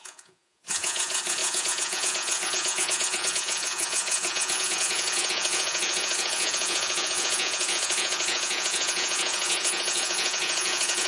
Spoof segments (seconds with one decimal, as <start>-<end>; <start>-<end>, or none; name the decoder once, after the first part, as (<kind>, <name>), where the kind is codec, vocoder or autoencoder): 0.0-11.1 (vocoder, Vocos)